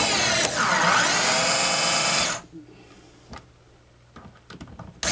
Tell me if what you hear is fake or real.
real